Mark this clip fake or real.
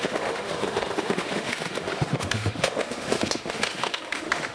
fake